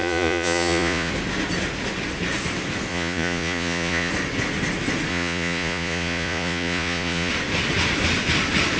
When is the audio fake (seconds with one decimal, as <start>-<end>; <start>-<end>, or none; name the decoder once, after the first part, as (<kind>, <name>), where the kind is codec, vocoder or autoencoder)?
0.0-1.1 (vocoder, Vocos); 2.9-4.1; 5.1-7.3